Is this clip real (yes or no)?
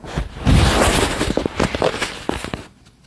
yes